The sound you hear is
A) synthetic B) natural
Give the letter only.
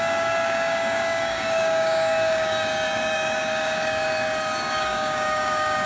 A